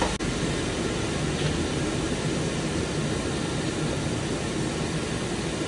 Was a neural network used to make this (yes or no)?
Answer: no